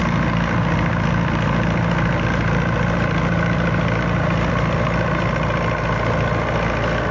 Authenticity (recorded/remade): recorded